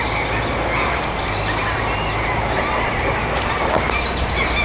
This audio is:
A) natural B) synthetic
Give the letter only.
A